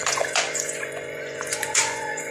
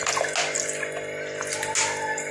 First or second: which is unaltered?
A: second